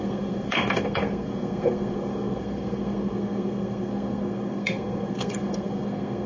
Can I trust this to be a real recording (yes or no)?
no